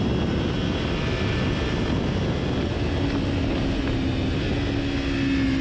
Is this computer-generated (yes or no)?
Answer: no